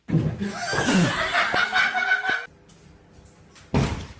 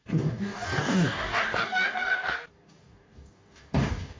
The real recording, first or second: first